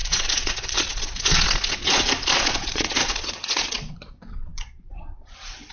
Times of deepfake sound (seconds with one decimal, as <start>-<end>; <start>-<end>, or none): 0.0-5.7